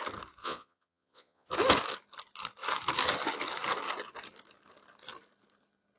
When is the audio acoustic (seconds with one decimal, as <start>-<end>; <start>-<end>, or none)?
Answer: 0.0-0.4; 1.5-6.0